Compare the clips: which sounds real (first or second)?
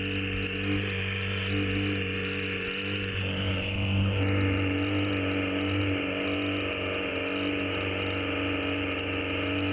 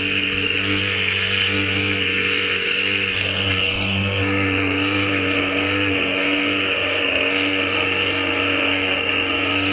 first